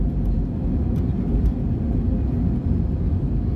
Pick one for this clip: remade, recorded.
recorded